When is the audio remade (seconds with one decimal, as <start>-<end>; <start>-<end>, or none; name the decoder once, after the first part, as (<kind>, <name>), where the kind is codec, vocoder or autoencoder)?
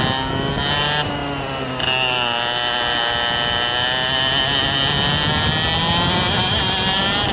none